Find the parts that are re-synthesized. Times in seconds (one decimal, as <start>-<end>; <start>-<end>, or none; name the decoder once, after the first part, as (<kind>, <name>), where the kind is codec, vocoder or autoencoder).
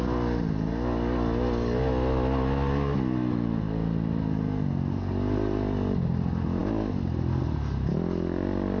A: none